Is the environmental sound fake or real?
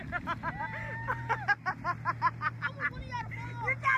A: real